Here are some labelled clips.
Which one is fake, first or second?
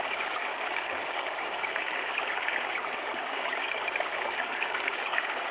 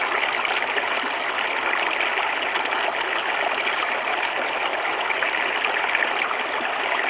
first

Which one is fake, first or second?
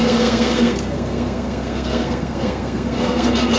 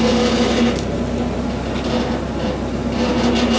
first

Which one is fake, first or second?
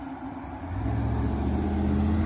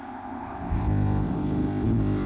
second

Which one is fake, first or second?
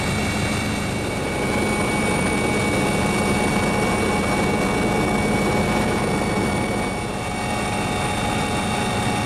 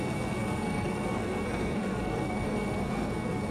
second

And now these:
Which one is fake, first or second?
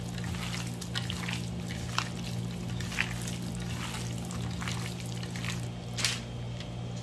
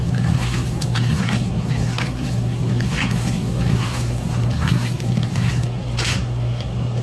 second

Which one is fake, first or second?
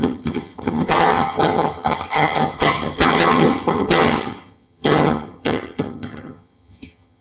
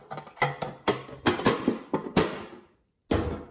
first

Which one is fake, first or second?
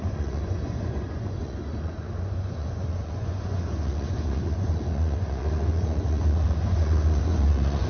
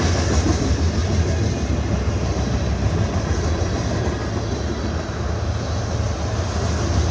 first